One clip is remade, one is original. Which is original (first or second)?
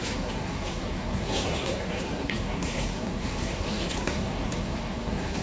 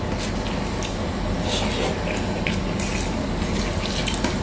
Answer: second